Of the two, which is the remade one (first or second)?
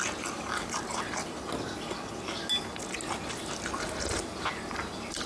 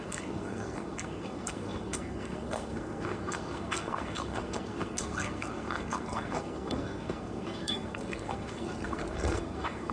second